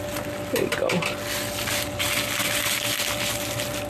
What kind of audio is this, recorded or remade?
recorded